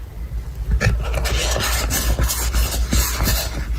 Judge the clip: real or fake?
real